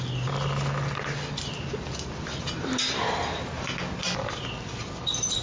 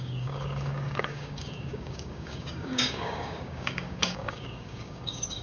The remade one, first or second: second